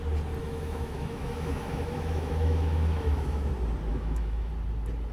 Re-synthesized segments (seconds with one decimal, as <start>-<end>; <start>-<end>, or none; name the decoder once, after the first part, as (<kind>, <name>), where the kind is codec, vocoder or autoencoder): 0.4-3.5 (autoencoder, DAC-VAE); 3.9-4.5